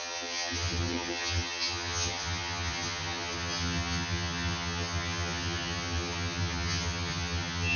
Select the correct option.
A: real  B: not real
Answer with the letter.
B